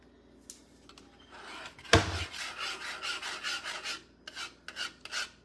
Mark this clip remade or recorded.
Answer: recorded